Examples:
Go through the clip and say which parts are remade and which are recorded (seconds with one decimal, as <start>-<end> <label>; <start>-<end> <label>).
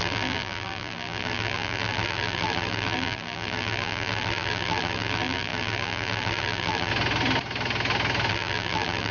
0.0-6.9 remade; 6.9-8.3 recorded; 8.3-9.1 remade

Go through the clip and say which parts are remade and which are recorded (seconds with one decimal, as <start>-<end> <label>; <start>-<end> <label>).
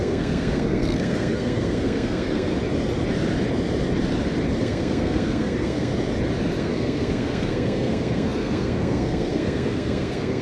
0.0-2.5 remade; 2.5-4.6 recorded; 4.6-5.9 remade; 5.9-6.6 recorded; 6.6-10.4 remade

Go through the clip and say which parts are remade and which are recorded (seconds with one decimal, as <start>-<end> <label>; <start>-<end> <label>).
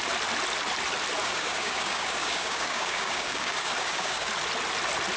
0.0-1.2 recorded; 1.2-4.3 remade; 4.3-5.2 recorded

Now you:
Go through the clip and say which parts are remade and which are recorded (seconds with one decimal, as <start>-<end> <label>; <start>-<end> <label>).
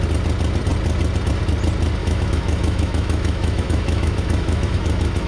0.0-2.0 recorded; 2.0-5.3 remade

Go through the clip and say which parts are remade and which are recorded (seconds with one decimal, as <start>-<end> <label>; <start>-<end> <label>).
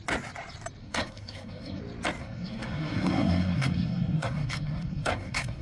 0.0-0.8 recorded; 0.8-1.8 remade; 1.8-2.2 recorded; 2.2-5.6 remade